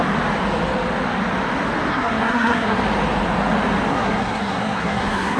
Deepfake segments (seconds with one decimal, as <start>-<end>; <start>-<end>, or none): 1.9-2.8; 3.9-5.4